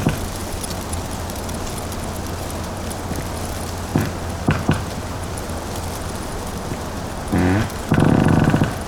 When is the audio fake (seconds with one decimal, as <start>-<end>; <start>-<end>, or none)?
0.0-0.4; 2.6-3.9; 4.8-8.9